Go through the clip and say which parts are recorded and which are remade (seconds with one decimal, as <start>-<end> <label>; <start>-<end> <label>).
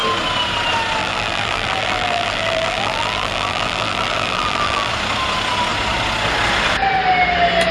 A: 0.0-1.0 recorded; 1.0-4.9 remade; 4.9-7.7 recorded